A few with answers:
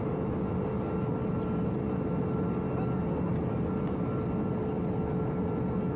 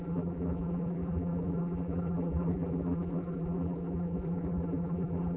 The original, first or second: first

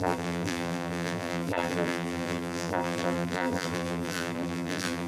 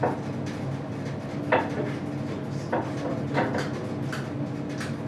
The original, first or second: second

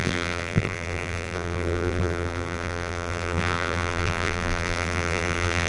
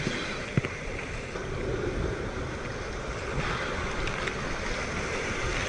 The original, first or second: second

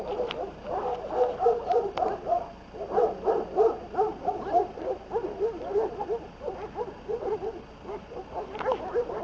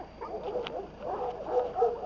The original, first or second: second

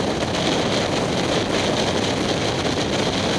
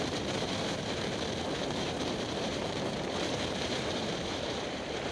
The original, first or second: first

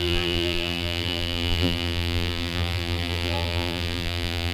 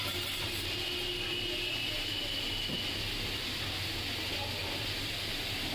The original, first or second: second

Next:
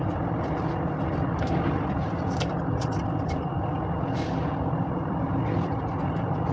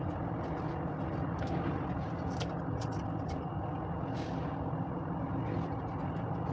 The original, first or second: second